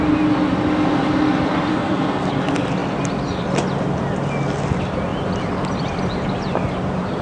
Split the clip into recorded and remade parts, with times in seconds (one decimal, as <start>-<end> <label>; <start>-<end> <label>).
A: 0.0-1.7 recorded; 1.7-2.3 remade; 2.3-7.2 recorded